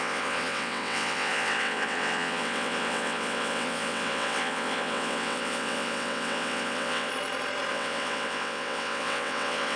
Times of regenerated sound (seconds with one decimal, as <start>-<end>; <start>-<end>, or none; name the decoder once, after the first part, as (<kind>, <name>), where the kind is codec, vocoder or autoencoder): 0.0-7.1 (vocoder, WaveNeXt); 7.7-9.8